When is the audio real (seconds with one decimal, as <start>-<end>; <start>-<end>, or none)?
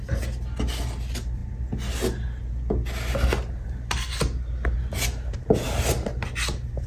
0.0-6.9